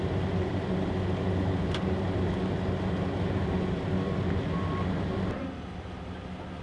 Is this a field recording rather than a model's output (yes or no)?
yes